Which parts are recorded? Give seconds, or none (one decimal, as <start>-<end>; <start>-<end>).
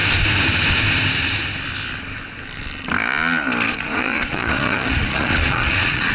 0.0-3.7